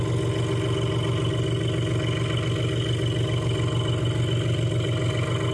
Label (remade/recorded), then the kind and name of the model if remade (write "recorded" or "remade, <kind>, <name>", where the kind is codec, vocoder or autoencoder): recorded